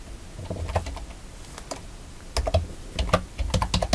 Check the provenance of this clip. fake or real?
real